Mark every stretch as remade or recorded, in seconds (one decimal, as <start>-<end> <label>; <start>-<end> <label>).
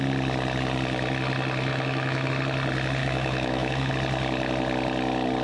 0.0-1.7 recorded; 1.7-2.3 remade; 2.3-3.0 recorded; 3.0-3.9 remade; 3.9-5.4 recorded